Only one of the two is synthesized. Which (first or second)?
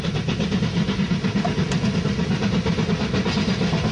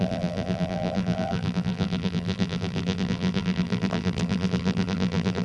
second